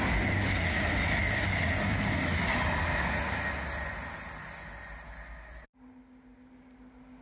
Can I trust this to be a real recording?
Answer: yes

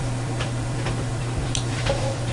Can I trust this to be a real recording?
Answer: no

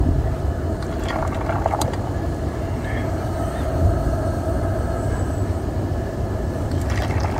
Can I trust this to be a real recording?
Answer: yes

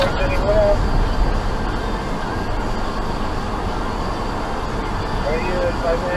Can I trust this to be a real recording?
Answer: yes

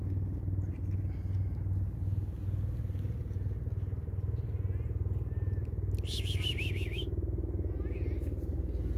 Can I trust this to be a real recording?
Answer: yes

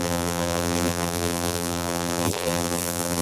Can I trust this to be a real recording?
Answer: no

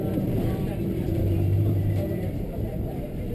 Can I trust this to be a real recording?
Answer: no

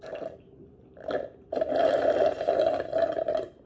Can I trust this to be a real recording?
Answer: no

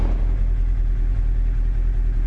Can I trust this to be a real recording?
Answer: yes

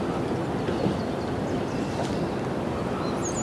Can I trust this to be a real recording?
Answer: yes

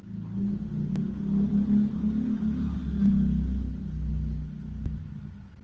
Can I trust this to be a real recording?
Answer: yes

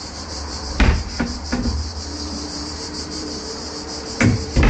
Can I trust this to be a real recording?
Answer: no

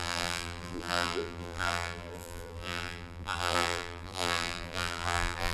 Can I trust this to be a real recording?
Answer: no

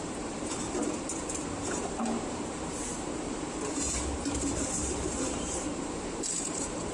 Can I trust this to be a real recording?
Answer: no